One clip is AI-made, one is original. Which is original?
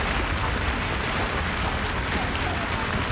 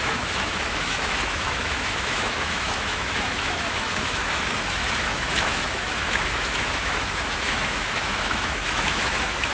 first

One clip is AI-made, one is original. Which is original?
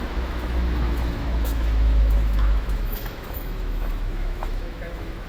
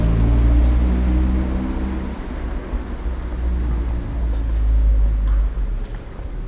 second